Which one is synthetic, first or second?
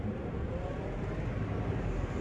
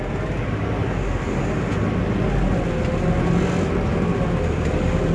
first